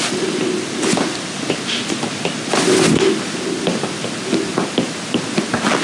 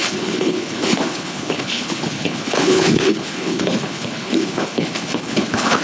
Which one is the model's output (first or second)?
second